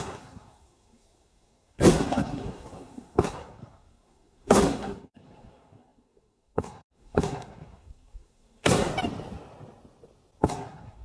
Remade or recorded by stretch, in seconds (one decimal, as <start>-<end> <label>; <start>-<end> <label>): 0.0-8.9 remade; 8.9-10.4 recorded; 10.4-11.0 remade